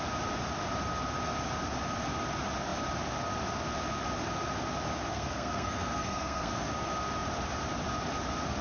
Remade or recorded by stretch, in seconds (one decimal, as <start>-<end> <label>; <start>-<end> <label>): 0.0-5.1 recorded; 5.1-6.5 remade; 6.5-8.6 recorded